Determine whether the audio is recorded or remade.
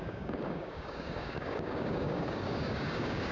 remade